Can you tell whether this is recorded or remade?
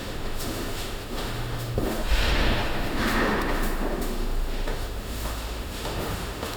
remade